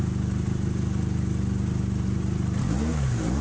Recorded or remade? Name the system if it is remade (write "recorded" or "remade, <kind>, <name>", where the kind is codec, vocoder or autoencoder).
recorded